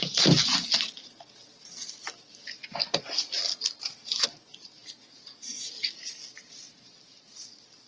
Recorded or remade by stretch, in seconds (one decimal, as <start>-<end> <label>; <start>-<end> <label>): 0.0-7.9 recorded